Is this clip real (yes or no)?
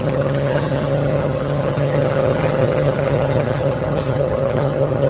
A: no